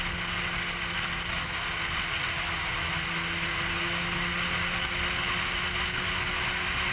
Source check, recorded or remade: recorded